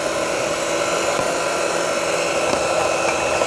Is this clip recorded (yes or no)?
yes